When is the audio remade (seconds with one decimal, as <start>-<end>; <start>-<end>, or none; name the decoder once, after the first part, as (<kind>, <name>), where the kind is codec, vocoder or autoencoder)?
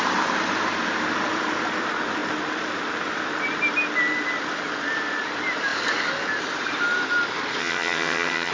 7.6-8.5 (vocoder, HiFi-GAN)